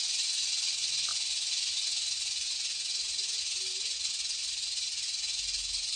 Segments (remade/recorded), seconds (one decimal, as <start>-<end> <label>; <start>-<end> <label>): 0.0-6.0 recorded